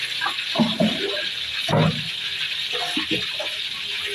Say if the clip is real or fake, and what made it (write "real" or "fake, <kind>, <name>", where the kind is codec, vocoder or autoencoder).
real